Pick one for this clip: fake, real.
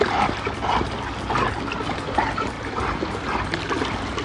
real